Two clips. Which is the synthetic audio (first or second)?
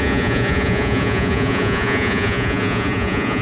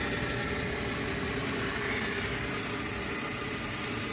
first